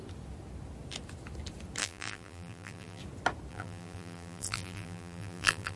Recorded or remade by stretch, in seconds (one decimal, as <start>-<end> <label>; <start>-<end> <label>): 0.0-1.8 recorded; 1.8-3.0 remade; 3.0-3.5 recorded; 3.5-5.8 remade